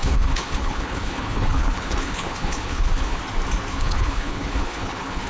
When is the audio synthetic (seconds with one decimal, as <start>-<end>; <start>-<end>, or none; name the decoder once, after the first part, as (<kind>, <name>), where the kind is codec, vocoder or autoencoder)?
0.0-3.2 (codec, HILCodec); 3.7-5.3